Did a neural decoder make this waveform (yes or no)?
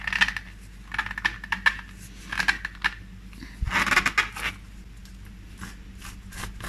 no